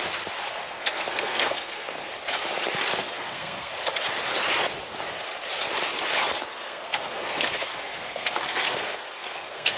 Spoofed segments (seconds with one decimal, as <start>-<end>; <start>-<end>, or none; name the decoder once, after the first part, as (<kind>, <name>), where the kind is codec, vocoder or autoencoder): 0.6-2.1 (codec, SNAC); 3.0-3.7; 6.5-9.8